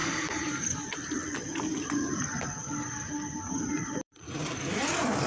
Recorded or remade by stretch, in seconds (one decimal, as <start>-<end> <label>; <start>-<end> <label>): 0.0-0.8 remade; 0.8-1.7 recorded; 1.7-5.3 remade